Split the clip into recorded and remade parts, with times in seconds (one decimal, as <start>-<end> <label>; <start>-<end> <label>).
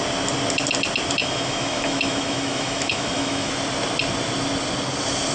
0.0-1.2 recorded; 1.2-3.5 remade; 3.5-5.3 recorded